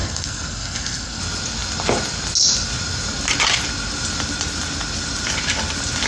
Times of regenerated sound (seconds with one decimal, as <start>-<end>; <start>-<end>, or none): 0.0-1.2